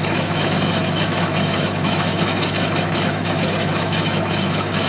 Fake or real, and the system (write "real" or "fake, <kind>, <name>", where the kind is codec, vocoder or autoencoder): fake, autoencoder, DAC-VAE